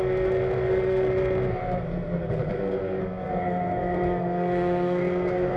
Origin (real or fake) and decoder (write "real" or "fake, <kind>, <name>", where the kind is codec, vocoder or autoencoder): fake, codec, SNAC